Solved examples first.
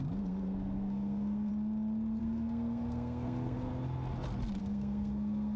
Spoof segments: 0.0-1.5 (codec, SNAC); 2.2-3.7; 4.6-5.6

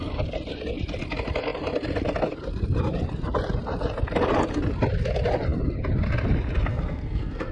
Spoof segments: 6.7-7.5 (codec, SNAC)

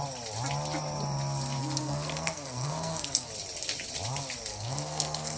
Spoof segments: 1.6-3.3 (codec, SNAC); 4.5-5.4

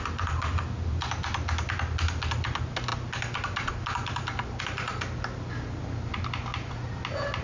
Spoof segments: 6.5-7.0 (vocoder, Vocos)

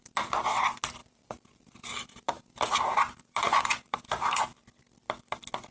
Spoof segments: 1.0-4.4 (vocoder, BigVGAN v2)

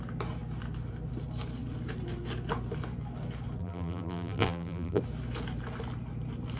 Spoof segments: 3.6-5.0 (vocoder, BigVGAN v2)

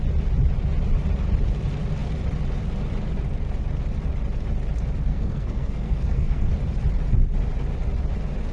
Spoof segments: 5.1-6.5 (codec, SNAC)